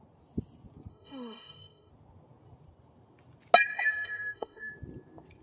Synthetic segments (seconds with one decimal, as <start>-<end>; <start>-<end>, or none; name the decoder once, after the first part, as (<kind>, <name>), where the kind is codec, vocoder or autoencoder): 0.9-1.9 (autoencoder, DAC-VAE); 3.7-4.7